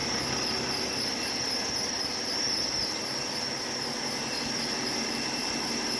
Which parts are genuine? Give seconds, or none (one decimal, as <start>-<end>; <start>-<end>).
0.0-3.6